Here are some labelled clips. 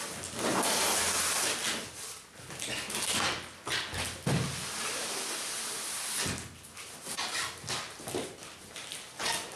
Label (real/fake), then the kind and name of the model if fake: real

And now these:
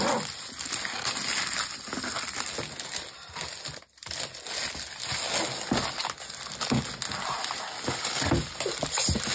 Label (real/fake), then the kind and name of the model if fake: real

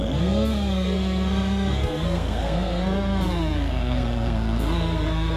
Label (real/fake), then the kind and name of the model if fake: fake, codec, SNAC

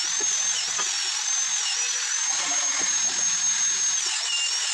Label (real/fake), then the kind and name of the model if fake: real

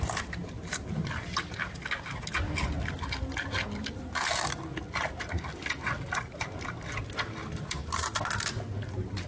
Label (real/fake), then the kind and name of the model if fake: real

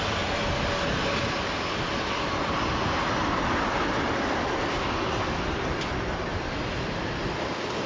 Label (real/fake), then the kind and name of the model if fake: real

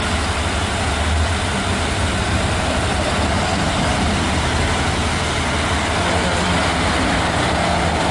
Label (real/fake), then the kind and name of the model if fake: real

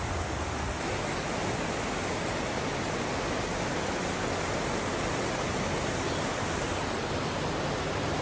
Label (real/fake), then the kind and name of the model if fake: real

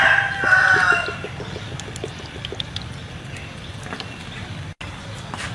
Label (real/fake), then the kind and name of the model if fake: real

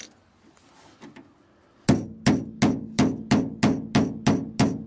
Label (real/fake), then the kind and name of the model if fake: real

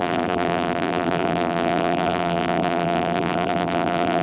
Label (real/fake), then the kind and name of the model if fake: fake, vocoder, BigVGAN v2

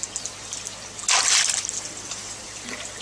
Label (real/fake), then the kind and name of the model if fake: real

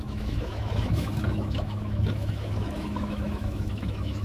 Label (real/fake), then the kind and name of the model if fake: fake, autoencoder, DAC-VAE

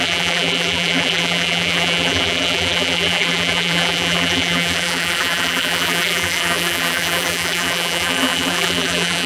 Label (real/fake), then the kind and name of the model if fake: fake, vocoder, BigVGAN v2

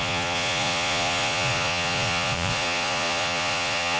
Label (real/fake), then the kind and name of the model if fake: fake, vocoder, Vocos